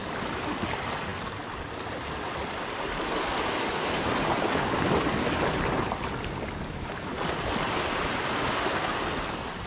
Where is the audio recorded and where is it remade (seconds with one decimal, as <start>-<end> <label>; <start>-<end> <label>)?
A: 0.0-9.7 recorded